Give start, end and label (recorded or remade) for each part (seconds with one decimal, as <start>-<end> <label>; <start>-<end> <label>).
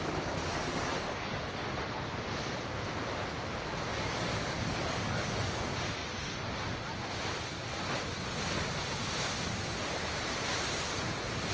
0.0-0.5 recorded; 0.5-1.4 remade; 1.4-3.9 recorded; 3.9-5.6 remade; 5.6-11.5 recorded